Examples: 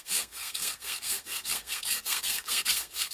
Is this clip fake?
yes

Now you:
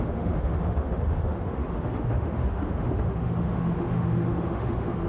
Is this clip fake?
yes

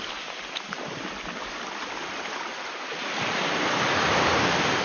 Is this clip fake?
no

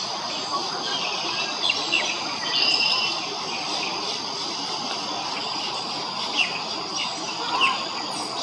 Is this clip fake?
no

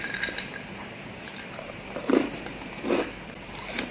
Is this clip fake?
yes